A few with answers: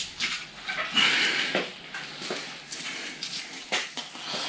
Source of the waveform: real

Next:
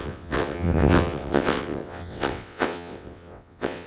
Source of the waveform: fake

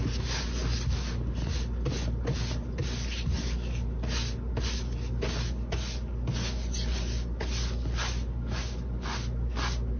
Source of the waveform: real